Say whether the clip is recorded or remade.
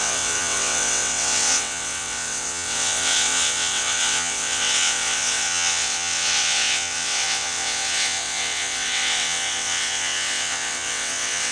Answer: remade